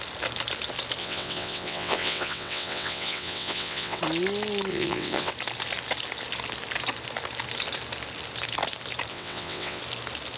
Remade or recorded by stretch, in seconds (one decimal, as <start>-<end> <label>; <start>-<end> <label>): 0.0-1.0 recorded; 1.0-4.0 remade; 4.0-4.7 recorded; 4.7-5.3 remade; 5.3-9.1 recorded; 9.1-9.8 remade; 9.8-10.4 recorded